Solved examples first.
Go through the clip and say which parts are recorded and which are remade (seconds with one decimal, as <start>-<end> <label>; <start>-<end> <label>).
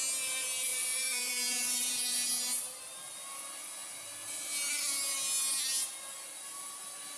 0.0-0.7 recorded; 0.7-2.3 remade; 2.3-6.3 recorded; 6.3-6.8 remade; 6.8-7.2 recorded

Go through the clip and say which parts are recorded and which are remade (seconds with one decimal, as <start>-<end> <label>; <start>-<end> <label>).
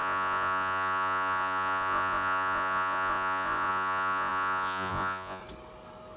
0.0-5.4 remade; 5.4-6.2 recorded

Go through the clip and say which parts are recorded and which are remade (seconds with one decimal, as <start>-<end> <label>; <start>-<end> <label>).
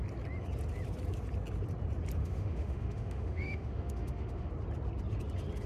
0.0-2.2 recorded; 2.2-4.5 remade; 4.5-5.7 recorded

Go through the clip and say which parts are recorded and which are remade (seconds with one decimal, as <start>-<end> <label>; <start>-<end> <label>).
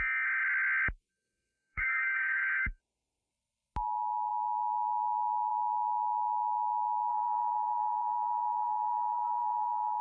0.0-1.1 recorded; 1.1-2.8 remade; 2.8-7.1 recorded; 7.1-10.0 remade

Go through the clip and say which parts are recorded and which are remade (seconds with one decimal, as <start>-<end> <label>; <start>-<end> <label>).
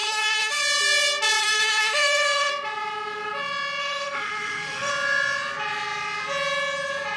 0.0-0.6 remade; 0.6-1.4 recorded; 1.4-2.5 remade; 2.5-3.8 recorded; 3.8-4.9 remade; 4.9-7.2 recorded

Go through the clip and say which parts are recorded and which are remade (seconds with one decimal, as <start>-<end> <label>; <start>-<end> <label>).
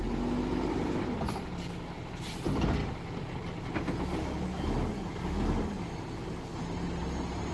0.0-7.5 recorded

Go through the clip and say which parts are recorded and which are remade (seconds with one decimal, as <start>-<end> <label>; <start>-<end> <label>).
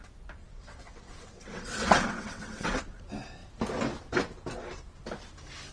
0.0-0.4 recorded; 0.4-2.8 remade; 2.8-5.7 recorded